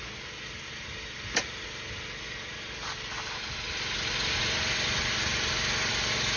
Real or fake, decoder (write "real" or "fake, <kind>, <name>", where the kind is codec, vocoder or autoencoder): real